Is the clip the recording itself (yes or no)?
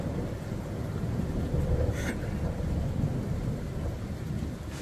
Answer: yes